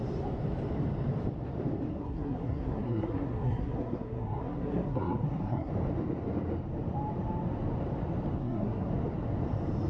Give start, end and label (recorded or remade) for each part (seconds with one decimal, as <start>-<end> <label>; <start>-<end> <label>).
0.0-1.9 recorded; 1.9-5.7 remade; 5.7-8.4 recorded; 8.4-8.9 remade; 8.9-9.9 recorded